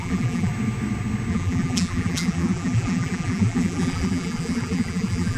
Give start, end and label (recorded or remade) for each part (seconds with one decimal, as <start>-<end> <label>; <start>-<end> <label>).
0.0-0.5 remade; 0.5-1.3 recorded; 1.3-5.4 remade